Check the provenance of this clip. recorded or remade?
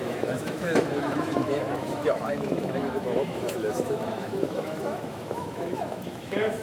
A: remade